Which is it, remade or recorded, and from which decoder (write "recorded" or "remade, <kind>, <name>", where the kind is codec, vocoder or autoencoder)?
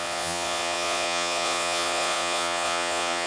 remade, vocoder, Vocos